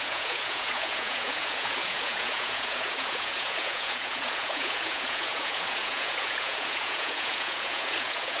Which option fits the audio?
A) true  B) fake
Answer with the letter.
B